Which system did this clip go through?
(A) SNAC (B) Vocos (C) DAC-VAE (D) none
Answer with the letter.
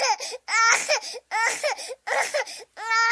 D